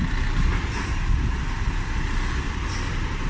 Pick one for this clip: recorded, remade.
recorded